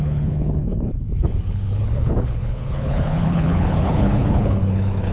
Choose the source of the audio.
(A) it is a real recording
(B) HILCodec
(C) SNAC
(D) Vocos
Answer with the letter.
B